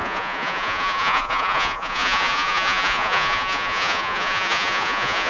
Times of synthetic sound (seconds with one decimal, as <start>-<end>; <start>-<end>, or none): 0.0-5.3